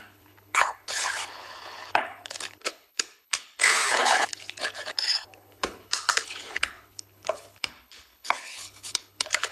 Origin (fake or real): fake